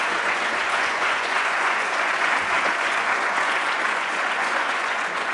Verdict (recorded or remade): remade